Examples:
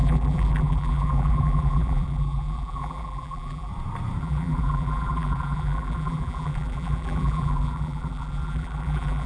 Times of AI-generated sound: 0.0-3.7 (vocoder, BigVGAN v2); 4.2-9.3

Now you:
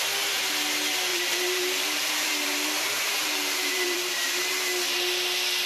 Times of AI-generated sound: 1.1-4.5 (vocoder, BigVGAN v2)

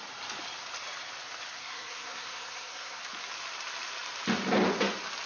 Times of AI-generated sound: 1.6-3.0 (codec, SNAC)

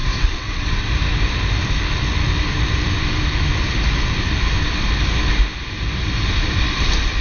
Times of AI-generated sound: 0.0-0.9 (vocoder, WaveNeXt)

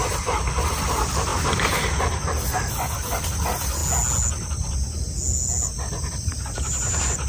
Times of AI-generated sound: 0.0-3.8 (vocoder, BigVGAN v2); 6.0-7.3